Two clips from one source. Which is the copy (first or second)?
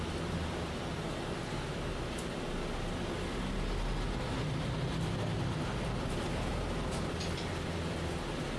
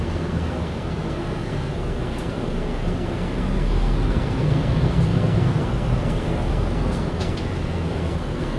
second